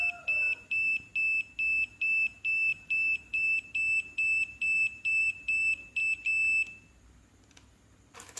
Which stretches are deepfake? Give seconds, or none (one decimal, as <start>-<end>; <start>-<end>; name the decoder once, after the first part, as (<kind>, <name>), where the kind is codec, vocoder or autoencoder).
0.0-1.1 (vocoder, BigVGAN v2); 1.9-6.0; 6.9-8.4